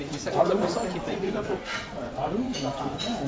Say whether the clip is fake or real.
fake